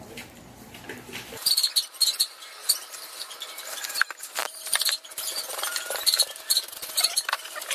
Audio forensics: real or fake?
fake